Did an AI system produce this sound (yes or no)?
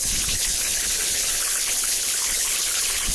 yes